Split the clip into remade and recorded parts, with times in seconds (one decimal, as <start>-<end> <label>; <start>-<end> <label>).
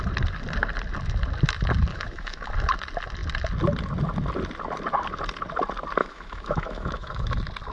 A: 0.0-1.9 recorded; 1.9-2.5 remade; 2.5-6.0 recorded; 6.0-7.3 remade; 7.3-7.7 recorded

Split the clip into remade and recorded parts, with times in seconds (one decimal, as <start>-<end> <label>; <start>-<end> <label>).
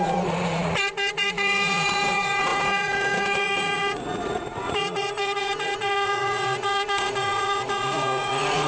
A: 0.0-8.7 remade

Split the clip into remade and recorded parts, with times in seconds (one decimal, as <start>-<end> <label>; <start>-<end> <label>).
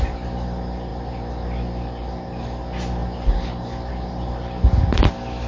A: 0.0-5.5 recorded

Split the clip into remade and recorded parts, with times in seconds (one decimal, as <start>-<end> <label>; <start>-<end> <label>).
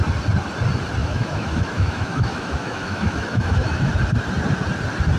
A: 0.0-1.0 recorded; 1.0-3.9 remade; 3.9-5.2 recorded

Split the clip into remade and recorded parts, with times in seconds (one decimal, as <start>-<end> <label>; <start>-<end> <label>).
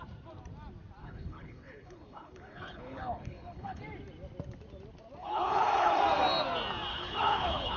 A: 0.0-1.0 recorded; 1.0-3.8 remade; 3.8-5.2 recorded; 5.2-6.0 remade; 6.0-6.9 recorded; 6.9-7.8 remade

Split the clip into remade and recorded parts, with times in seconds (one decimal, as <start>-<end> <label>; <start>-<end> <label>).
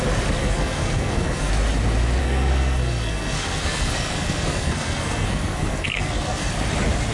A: 0.0-0.4 recorded; 0.4-1.5 remade; 1.5-2.2 recorded; 2.2-6.5 remade; 6.5-7.1 recorded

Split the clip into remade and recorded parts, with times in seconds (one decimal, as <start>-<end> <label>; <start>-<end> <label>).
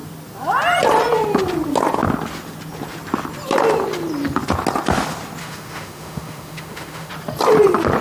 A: 0.0-5.4 recorded; 5.4-7.1 remade; 7.1-8.0 recorded